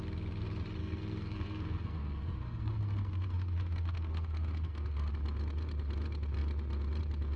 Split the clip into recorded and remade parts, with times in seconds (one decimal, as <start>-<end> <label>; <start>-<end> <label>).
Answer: 0.0-0.8 recorded; 0.8-5.1 remade; 5.1-7.4 recorded